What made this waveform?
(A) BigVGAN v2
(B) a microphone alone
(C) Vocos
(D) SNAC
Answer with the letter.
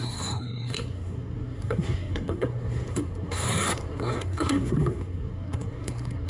D